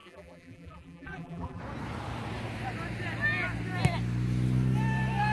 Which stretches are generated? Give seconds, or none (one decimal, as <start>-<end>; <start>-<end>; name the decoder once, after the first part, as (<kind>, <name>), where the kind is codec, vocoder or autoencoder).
0.0-1.6 (vocoder, BigVGAN v2)